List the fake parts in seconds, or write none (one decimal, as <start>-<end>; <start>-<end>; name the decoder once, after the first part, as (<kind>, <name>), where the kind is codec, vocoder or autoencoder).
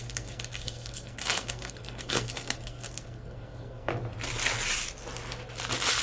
0.0-3.9 (codec, SNAC)